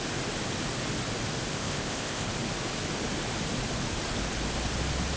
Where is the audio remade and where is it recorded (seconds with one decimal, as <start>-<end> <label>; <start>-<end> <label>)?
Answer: 0.0-1.5 recorded; 1.5-2.3 remade; 2.3-5.2 recorded